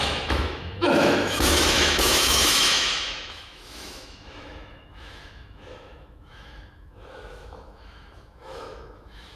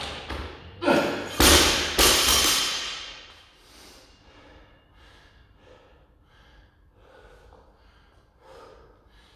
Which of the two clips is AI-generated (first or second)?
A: first